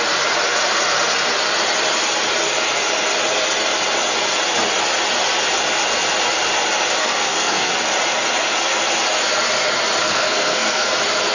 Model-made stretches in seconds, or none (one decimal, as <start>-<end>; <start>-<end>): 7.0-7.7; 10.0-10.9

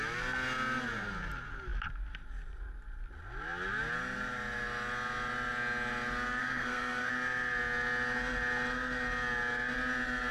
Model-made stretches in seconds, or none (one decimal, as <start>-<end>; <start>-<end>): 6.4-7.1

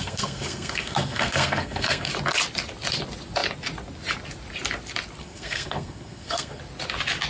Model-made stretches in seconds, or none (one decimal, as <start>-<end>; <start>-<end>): 0.0-2.1; 5.2-6.6